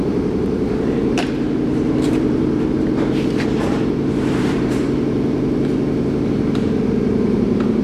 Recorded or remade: remade